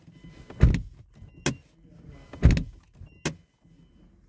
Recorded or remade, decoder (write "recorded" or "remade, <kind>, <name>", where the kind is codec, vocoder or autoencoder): recorded